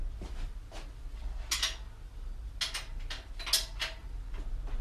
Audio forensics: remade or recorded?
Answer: recorded